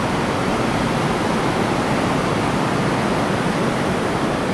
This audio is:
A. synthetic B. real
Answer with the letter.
B